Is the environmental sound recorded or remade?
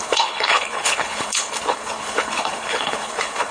remade